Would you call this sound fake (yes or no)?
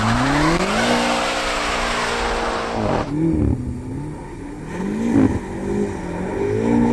no